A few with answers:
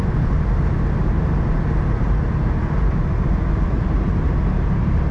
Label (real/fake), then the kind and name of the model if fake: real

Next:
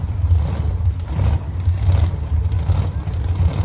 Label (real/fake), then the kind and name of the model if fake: real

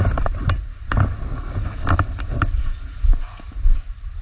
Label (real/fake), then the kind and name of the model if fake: real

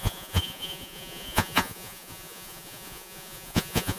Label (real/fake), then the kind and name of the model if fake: fake, vocoder, Vocos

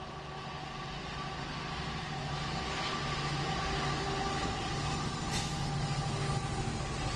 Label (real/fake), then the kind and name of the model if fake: real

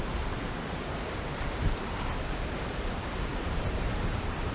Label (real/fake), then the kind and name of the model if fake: fake, vocoder, BigVGAN v2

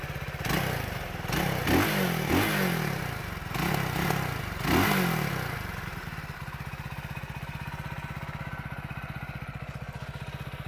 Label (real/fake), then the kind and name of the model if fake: real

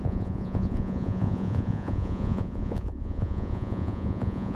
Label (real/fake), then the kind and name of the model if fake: fake, vocoder, Vocos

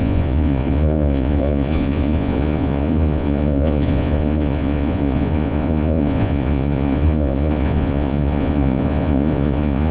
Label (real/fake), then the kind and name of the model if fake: fake, vocoder, Vocos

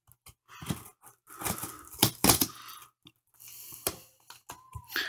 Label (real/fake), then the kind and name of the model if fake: real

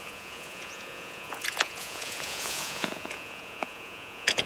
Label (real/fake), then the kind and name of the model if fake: fake, vocoder, Vocos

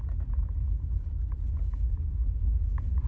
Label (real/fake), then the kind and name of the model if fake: real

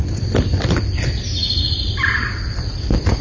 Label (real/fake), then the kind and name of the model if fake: fake, vocoder, BigVGAN v2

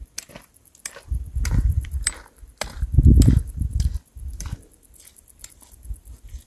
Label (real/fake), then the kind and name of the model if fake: fake, vocoder, BigVGAN v2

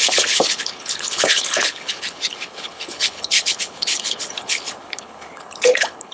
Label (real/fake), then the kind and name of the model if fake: fake, codec, HILCodec